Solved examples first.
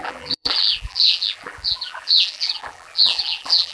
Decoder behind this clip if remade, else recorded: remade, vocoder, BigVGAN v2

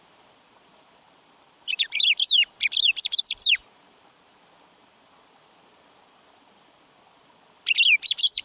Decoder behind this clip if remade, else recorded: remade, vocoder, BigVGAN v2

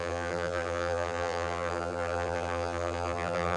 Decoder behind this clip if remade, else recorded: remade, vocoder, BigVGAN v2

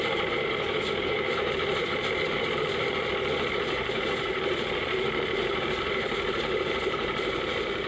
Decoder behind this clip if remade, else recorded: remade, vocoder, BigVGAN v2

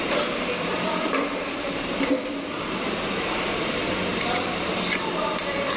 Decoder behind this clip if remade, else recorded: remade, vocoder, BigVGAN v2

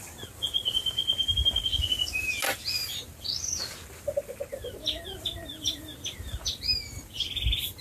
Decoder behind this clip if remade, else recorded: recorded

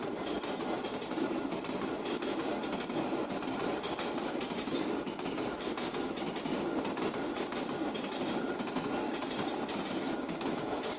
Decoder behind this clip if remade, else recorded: remade, vocoder, BigVGAN v2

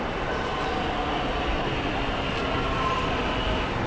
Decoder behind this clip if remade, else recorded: remade, vocoder, BigVGAN v2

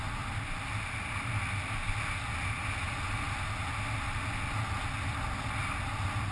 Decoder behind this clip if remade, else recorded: recorded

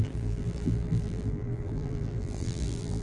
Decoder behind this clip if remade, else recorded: remade, vocoder, BigVGAN v2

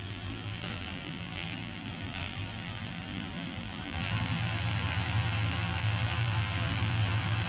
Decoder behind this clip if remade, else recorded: remade, vocoder, BigVGAN v2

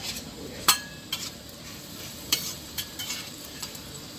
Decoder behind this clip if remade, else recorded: remade, vocoder, BigVGAN v2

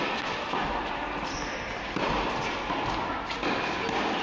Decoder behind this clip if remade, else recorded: recorded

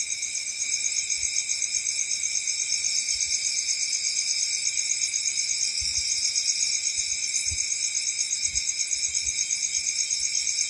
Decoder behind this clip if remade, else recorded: recorded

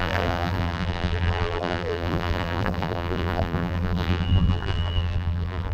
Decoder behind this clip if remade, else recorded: remade, vocoder, BigVGAN v2